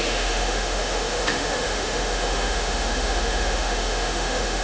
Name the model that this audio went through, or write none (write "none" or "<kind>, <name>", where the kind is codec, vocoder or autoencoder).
autoencoder, DAC-VAE